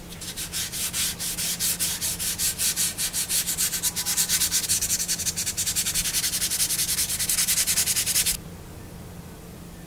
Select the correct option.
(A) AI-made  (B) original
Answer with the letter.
B